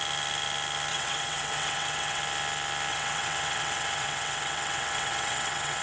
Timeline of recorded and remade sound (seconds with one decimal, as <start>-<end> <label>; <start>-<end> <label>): 0.0-0.9 recorded; 0.9-2.2 remade; 2.2-2.9 recorded; 2.9-5.8 remade